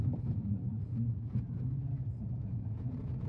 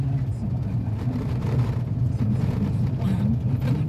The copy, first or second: first